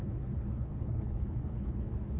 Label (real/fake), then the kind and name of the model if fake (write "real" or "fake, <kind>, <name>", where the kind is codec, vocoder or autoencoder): fake, codec, HILCodec